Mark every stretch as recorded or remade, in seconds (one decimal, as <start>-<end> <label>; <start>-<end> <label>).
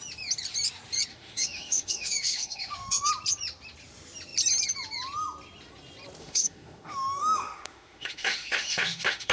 0.0-1.1 recorded; 1.1-3.1 remade; 3.1-6.2 recorded; 6.2-9.3 remade